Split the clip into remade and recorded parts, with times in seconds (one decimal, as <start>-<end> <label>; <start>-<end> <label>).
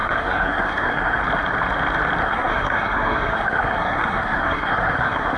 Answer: 0.0-1.2 remade; 1.2-2.2 recorded; 2.2-5.4 remade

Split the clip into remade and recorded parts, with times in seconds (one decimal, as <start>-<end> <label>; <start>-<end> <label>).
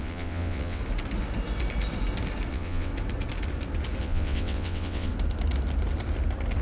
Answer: 0.0-0.8 remade; 0.8-2.5 recorded; 2.5-2.9 remade; 2.9-4.0 recorded; 4.0-5.1 remade; 5.1-6.6 recorded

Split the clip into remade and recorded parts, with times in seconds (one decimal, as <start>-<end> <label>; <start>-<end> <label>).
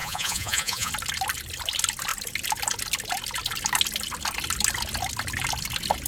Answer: 0.0-0.9 remade; 0.9-6.1 recorded